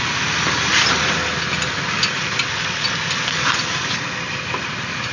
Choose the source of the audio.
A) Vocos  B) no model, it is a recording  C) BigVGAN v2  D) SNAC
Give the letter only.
B